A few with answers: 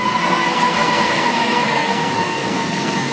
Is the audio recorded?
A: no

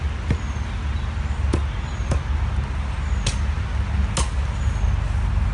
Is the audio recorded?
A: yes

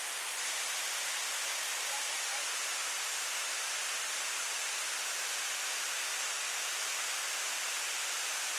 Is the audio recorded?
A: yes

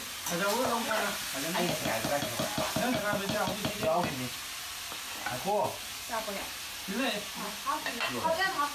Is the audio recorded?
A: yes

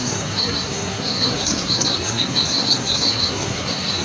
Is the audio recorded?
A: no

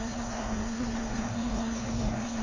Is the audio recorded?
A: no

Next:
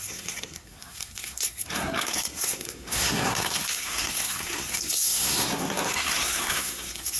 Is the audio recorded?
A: no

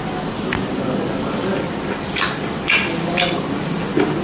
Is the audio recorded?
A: yes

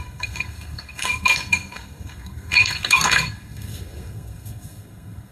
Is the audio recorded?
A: no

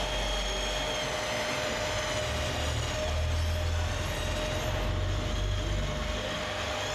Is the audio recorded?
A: yes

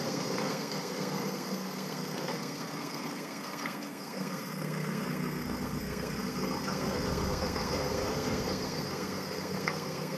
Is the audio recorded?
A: no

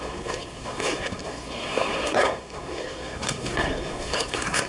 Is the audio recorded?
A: no